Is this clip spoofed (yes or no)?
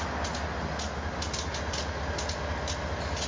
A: no